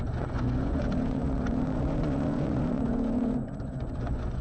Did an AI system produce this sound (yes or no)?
yes